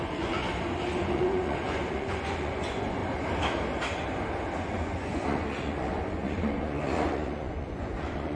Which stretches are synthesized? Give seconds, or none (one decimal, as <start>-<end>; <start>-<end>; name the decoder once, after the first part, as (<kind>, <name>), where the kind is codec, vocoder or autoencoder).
0.0-0.4 (vocoder, Vocos); 1.0-3.0; 4.6-8.3